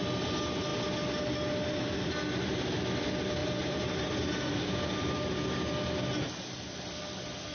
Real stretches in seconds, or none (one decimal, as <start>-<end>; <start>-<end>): 0.0-3.4; 4.6-7.5